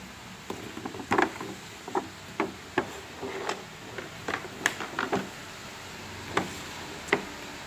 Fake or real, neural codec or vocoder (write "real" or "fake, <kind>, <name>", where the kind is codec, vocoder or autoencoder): real